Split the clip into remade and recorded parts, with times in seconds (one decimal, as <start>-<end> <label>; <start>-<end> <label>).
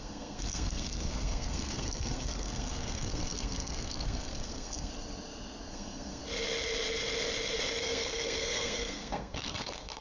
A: 0.0-4.9 remade; 4.9-5.7 recorded; 5.7-6.2 remade; 6.2-7.8 recorded; 7.8-10.0 remade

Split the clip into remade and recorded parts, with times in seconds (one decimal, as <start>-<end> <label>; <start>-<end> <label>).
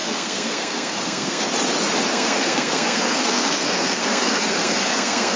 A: 0.0-1.4 remade; 1.4-2.1 recorded; 2.1-5.4 remade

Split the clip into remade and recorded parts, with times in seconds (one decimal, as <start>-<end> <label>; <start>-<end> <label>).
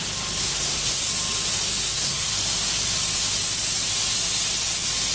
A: 0.0-0.4 recorded; 0.4-1.0 remade; 1.0-1.8 recorded; 1.8-2.3 remade; 2.3-5.1 recorded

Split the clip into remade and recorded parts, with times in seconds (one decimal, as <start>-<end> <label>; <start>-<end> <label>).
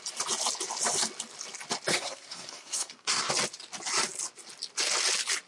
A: 0.0-1.9 recorded; 1.9-3.3 remade; 3.3-5.5 recorded